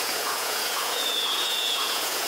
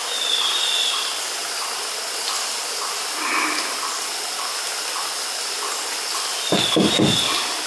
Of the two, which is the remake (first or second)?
first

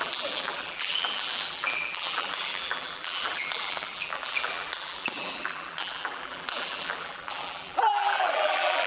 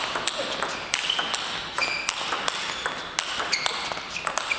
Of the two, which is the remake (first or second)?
first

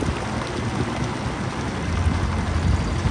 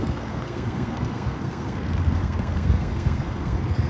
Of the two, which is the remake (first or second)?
second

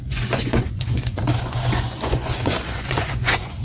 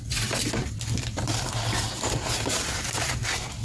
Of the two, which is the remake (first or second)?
first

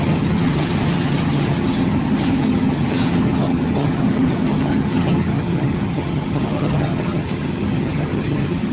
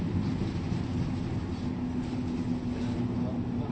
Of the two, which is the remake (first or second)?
first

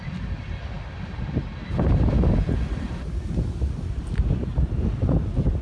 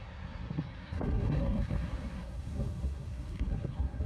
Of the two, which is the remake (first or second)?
second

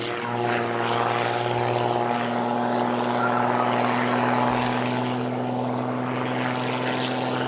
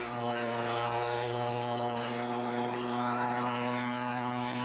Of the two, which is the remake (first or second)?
second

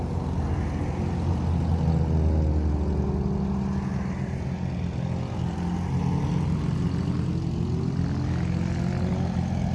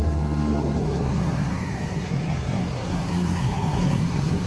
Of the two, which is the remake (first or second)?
second